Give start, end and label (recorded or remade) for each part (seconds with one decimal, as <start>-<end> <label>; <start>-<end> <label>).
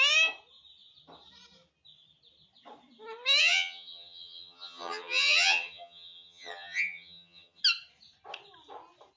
0.0-3.4 recorded; 3.4-7.6 remade; 7.6-9.2 recorded